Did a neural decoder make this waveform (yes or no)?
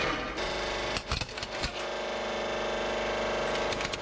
no